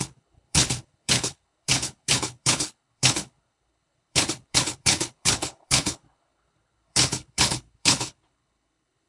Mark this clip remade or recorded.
remade